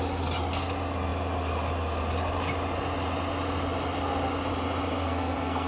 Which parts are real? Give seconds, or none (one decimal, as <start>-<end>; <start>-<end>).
0.0-5.0